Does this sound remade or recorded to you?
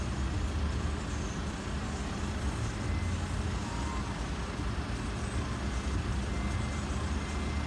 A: recorded